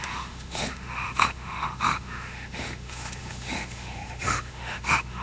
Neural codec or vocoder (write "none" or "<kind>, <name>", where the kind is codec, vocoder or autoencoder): autoencoder, DAC-VAE